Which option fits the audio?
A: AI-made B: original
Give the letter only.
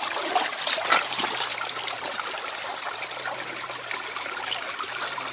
B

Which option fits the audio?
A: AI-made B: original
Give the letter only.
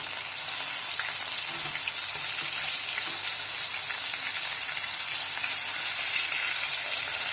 B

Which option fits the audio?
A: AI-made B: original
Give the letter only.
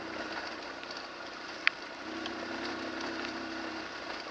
B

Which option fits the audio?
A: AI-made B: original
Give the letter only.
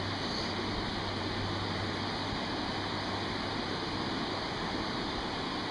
B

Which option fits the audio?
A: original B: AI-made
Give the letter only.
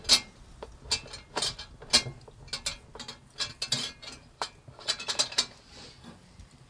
A